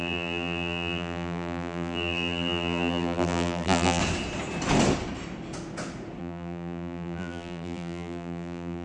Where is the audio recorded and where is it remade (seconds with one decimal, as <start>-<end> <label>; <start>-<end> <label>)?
0.0-4.0 remade; 4.0-6.2 recorded; 6.2-8.8 remade